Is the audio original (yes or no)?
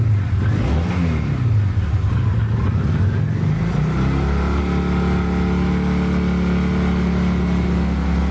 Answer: yes